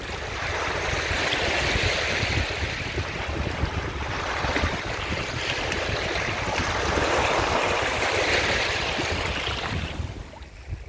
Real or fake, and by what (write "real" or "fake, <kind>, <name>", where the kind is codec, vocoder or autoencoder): real